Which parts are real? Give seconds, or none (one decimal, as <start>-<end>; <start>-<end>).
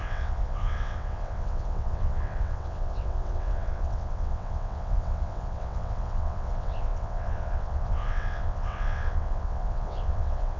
none